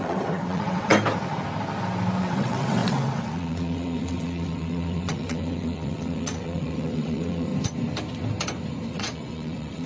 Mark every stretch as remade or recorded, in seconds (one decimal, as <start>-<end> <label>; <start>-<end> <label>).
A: 0.0-0.9 remade; 0.9-2.2 recorded; 2.2-7.5 remade; 7.5-8.9 recorded; 8.9-9.9 remade